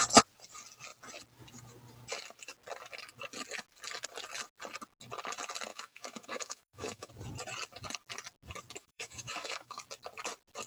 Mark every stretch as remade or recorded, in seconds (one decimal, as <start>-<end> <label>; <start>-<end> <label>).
0.0-5.7 recorded; 5.7-7.1 remade; 7.1-8.8 recorded; 8.8-9.8 remade; 9.8-10.7 recorded